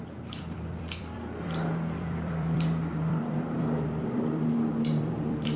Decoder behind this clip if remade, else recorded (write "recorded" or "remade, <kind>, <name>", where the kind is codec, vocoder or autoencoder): remade, vocoder, BigVGAN v2